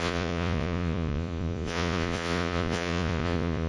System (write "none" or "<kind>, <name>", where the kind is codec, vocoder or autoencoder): vocoder, Vocos